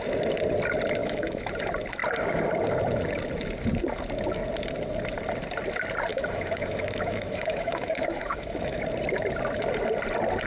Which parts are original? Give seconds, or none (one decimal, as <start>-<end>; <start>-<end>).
0.0-1.0; 1.5-6.1; 8.8-10.5